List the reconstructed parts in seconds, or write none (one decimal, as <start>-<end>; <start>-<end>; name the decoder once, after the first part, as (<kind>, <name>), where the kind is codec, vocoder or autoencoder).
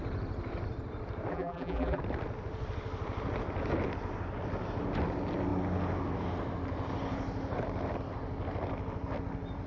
1.3-2.0 (vocoder, BigVGAN v2)